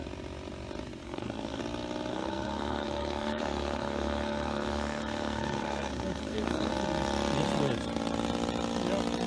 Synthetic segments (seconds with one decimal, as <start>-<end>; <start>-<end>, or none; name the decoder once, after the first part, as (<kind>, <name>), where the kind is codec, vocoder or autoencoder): 1.0-1.6 (codec, SNAC); 2.1-6.7